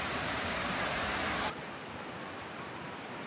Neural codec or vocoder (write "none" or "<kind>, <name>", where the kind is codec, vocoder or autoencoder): vocoder, BigVGAN v2